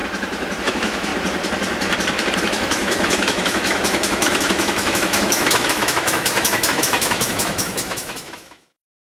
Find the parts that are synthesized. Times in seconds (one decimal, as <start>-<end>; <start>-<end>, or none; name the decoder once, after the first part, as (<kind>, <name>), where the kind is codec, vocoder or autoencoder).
0.6-1.1 (autoencoder, DAC-VAE); 2.4-9.0